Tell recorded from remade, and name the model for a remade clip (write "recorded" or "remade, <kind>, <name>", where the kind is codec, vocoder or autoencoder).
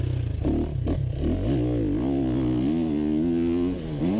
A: recorded